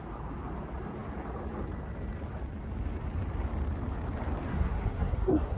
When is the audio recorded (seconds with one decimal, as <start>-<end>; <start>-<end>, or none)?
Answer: 0.0-4.5